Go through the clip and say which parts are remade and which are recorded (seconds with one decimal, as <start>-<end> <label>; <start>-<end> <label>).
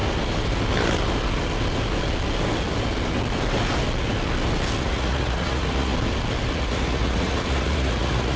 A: 0.0-4.8 recorded; 4.8-5.9 remade; 5.9-6.5 recorded; 6.5-8.4 remade